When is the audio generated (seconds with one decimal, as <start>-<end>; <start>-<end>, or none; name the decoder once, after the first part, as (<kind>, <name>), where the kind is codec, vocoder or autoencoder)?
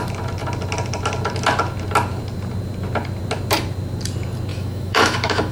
4.5-5.5 (autoencoder, DAC-VAE)